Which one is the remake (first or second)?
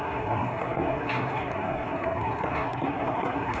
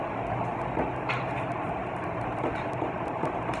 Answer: first